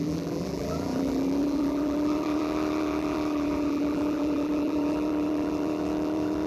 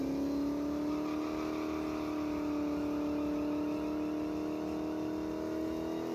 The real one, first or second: second